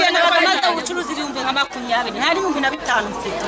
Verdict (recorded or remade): remade